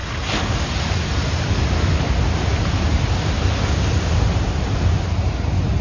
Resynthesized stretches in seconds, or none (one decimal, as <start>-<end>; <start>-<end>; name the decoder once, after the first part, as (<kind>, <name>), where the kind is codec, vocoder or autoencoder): none